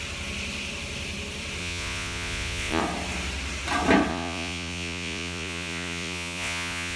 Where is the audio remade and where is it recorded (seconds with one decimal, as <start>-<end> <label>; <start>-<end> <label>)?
0.0-1.6 recorded; 1.6-2.8 remade; 2.8-4.1 recorded; 4.1-7.0 remade